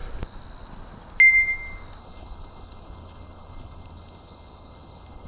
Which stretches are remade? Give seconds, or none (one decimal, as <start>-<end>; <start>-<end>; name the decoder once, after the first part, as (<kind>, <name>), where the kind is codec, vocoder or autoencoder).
2.0-5.3 (codec, HILCodec)